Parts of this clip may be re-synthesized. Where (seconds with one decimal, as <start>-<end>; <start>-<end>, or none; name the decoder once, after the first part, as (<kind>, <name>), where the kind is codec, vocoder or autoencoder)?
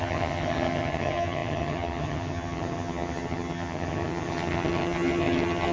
0.0-5.7 (vocoder, HiFi-GAN)